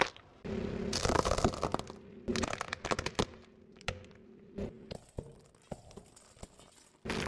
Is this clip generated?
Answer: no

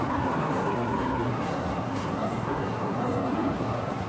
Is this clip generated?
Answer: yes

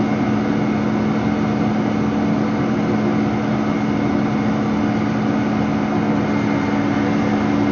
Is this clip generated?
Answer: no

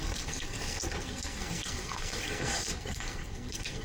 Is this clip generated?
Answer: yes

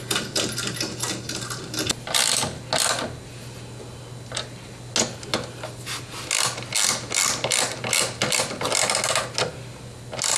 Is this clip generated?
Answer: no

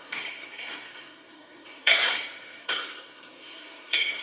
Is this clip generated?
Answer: yes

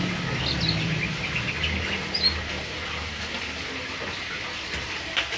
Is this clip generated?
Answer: no